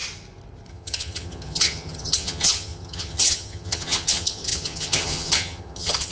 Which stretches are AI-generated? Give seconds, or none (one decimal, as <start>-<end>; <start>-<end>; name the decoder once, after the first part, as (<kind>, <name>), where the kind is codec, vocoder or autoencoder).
0.7-6.1 (vocoder, HiFi-GAN)